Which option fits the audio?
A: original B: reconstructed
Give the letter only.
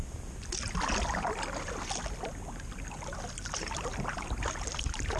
A